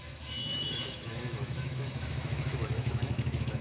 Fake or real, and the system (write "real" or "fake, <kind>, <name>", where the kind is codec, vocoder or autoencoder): fake, autoencoder, DAC-VAE